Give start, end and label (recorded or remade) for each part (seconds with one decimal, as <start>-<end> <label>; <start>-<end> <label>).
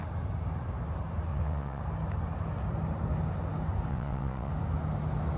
0.0-1.3 recorded; 1.3-1.8 remade; 1.8-3.9 recorded; 3.9-4.5 remade; 4.5-5.4 recorded